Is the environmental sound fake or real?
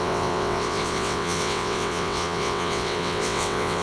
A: fake